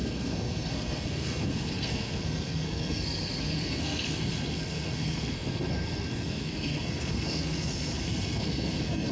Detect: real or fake fake